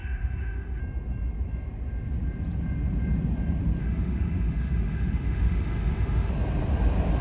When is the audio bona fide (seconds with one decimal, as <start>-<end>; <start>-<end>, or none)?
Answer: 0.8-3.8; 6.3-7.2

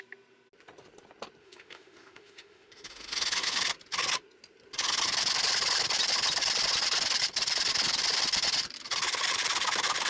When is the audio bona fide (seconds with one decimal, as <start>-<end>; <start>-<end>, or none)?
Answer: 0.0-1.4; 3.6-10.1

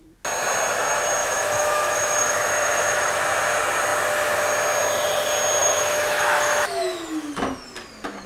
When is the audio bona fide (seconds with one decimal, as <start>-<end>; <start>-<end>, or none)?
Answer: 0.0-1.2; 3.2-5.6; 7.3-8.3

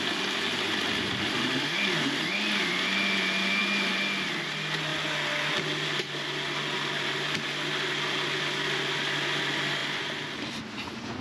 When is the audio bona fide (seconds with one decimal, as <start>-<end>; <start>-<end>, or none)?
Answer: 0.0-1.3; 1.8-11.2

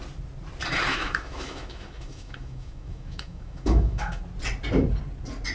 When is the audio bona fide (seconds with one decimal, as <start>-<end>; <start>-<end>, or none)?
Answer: 0.0-0.9; 4.2-5.5

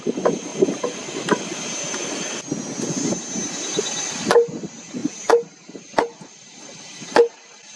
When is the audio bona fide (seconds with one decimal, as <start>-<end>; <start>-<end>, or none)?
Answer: 0.0-7.8